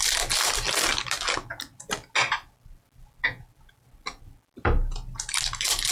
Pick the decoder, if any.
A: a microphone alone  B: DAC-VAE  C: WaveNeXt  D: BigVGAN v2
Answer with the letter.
A